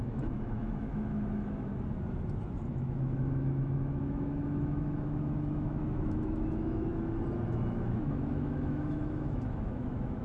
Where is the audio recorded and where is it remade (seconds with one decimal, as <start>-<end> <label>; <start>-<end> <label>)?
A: 0.0-1.7 remade; 1.7-2.7 recorded; 2.7-6.9 remade; 6.9-7.5 recorded; 7.5-10.2 remade